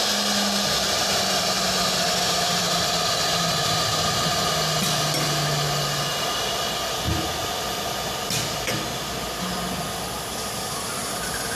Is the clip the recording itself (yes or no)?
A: yes